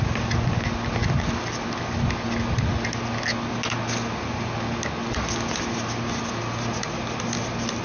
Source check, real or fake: real